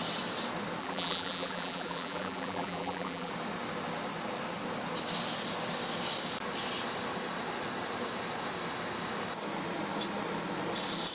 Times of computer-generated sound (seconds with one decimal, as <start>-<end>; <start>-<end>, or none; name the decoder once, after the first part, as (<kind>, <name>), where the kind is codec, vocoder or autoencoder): 0.8-3.3 (vocoder, BigVGAN v2)